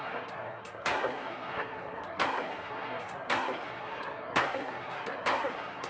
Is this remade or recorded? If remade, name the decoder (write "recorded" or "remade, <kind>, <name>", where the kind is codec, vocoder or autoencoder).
remade, codec, SNAC